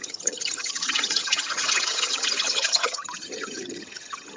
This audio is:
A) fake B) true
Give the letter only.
A